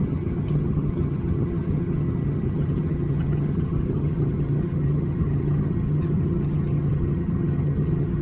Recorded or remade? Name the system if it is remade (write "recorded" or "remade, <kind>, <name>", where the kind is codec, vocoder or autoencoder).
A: remade, vocoder, HiFi-GAN